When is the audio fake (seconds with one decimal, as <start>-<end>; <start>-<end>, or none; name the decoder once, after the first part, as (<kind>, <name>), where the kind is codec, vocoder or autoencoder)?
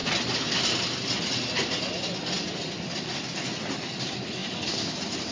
none